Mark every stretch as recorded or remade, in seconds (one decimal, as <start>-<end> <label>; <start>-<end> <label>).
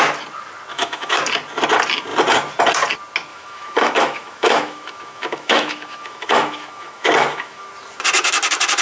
0.0-0.7 recorded; 0.7-1.2 remade; 1.2-3.3 recorded; 3.3-7.7 remade; 7.7-8.8 recorded